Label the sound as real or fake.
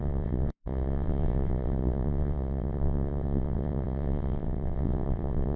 fake